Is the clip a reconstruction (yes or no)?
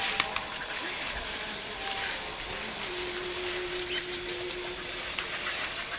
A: no